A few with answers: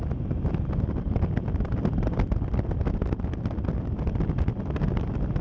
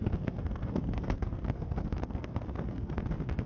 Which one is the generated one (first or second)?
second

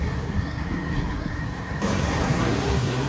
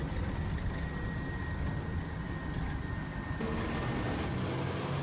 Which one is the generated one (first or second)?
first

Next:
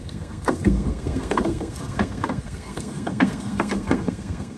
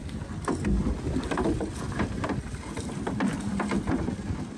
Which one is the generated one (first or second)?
first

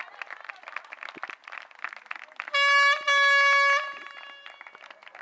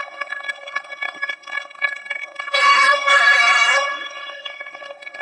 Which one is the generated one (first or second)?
second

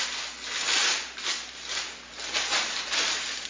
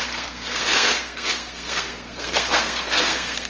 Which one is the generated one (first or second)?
second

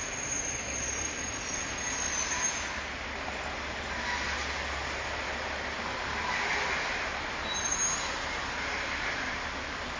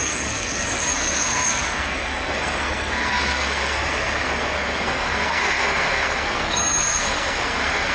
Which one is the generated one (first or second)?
second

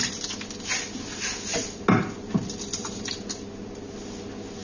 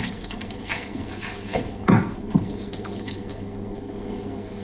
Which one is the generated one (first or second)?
second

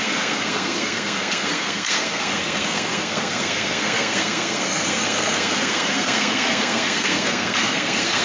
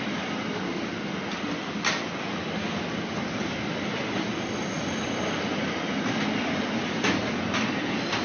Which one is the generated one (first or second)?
first